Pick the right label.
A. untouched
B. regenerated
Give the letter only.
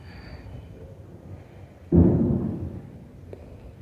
A